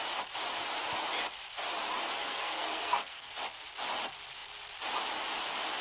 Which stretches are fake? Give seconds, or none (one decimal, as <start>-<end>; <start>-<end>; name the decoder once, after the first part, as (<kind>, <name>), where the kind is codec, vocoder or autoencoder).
2.2-3.3 (codec, SNAC)